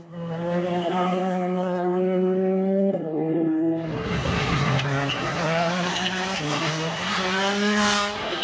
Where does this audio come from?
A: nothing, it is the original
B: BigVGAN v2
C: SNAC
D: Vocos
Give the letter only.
C